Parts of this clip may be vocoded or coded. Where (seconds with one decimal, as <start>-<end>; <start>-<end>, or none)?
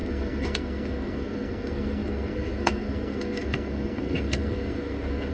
0.0-5.3